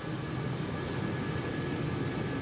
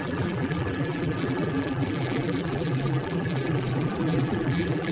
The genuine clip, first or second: first